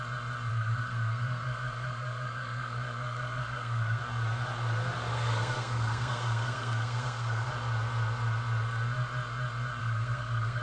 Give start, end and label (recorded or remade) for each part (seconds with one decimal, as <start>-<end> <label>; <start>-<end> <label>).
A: 0.0-0.5 recorded; 0.5-4.0 remade; 4.0-5.1 recorded; 5.1-7.5 remade; 7.5-9.8 recorded; 9.8-10.6 remade